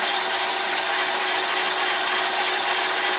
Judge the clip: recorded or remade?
recorded